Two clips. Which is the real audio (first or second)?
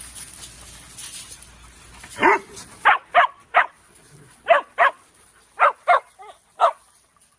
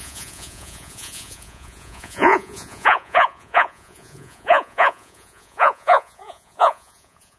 first